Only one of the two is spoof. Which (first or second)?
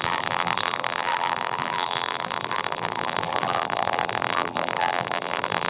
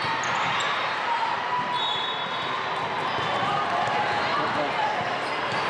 first